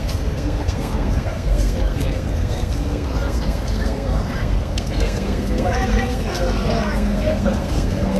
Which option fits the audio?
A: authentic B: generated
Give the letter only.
B